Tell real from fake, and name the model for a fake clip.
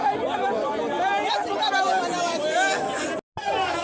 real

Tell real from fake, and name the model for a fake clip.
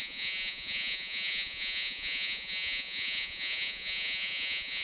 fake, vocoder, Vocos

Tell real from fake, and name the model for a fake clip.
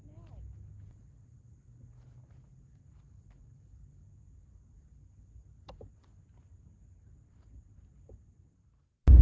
real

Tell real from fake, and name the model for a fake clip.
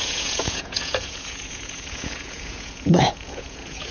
fake, vocoder, Vocos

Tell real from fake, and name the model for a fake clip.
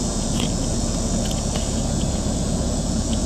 fake, vocoder, Vocos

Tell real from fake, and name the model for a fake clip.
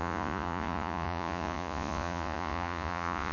fake, vocoder, Vocos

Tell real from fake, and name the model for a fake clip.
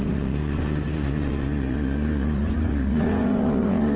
fake, vocoder, Vocos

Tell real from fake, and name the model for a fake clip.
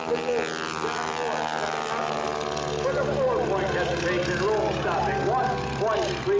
real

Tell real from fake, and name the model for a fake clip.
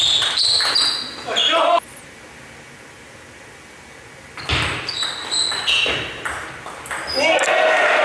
real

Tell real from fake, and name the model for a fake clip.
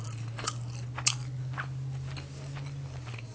real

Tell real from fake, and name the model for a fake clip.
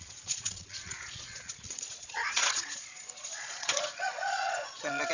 fake, vocoder, Vocos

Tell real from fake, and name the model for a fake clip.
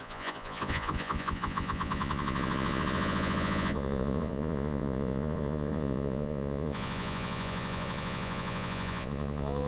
fake, vocoder, Vocos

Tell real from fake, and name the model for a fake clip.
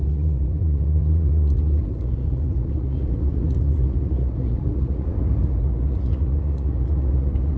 fake, vocoder, Vocos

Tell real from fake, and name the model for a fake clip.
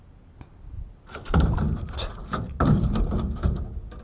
real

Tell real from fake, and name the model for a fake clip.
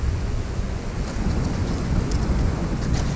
fake, vocoder, Vocos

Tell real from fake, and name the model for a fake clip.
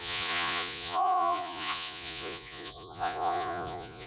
fake, vocoder, Vocos